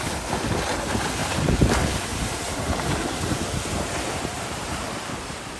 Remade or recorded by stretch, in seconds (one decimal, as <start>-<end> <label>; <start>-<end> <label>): 0.0-1.2 recorded; 1.2-1.7 remade; 1.7-2.1 recorded; 2.1-5.6 remade